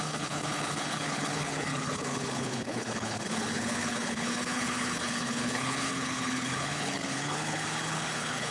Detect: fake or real fake